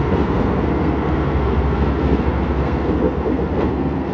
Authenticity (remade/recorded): remade